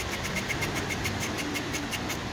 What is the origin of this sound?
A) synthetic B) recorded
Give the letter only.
A